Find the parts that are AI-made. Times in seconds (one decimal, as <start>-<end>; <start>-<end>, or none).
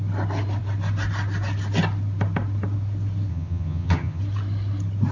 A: 3.3-4.2